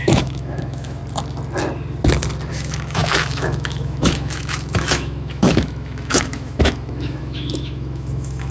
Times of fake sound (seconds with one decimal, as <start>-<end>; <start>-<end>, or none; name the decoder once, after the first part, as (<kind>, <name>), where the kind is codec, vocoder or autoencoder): 0.0-1.0 (autoencoder, DAC-VAE); 2.5-8.5